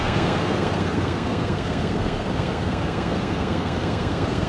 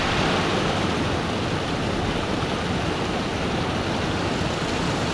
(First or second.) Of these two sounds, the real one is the second